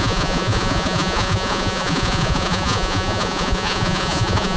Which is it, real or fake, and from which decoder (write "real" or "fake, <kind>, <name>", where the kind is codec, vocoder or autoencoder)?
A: fake, vocoder, Vocos